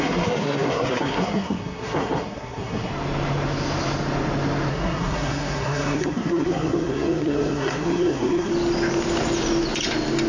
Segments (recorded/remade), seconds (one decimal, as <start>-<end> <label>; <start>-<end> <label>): 0.0-2.9 remade; 2.9-4.7 recorded; 4.7-8.5 remade; 8.5-10.3 recorded